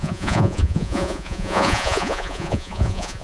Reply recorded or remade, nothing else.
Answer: remade